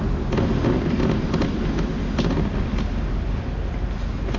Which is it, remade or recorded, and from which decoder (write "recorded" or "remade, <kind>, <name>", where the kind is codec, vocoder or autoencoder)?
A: recorded